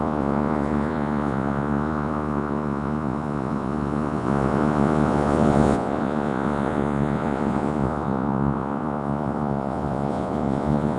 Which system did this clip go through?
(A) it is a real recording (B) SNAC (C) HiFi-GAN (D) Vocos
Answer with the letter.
D